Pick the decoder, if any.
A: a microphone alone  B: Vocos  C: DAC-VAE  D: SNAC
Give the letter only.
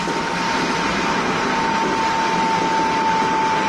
A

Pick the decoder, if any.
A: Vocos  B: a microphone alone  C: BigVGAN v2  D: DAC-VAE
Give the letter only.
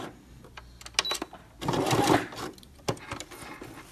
B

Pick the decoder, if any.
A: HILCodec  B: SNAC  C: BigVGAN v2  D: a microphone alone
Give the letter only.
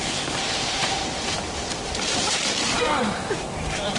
C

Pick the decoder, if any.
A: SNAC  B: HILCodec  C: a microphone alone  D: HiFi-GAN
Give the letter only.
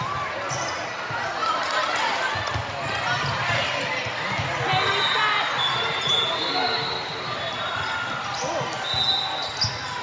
C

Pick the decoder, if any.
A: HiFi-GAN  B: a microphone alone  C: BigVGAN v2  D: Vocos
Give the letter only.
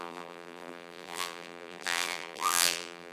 C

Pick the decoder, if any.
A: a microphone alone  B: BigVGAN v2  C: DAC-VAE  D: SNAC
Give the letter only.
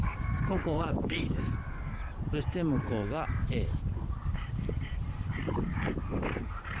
B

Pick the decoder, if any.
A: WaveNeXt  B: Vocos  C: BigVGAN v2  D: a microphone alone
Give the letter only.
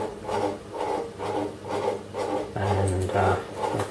D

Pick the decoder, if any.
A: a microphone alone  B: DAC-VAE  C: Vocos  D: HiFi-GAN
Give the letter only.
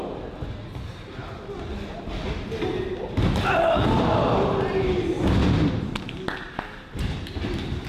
A